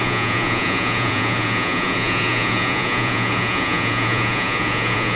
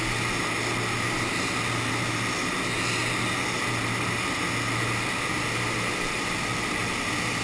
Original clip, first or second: second